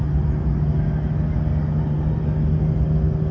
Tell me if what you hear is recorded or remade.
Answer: recorded